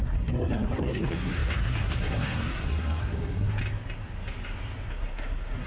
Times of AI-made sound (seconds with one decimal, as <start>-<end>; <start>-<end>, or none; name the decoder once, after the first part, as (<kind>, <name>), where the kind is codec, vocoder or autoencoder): 0.0-3.6 (codec, SNAC); 4.9-5.7